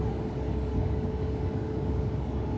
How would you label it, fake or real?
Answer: fake